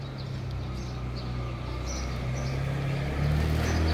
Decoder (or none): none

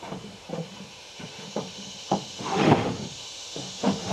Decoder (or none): autoencoder, DAC-VAE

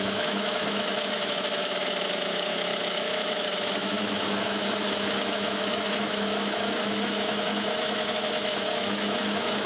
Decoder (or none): autoencoder, DAC-VAE